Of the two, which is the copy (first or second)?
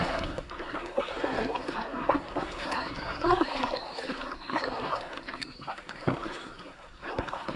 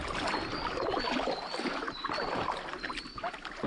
first